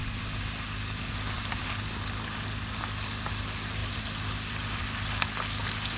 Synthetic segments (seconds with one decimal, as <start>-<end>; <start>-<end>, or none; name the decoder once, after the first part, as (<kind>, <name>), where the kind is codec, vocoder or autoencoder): none